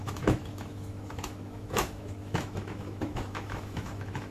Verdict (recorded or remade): remade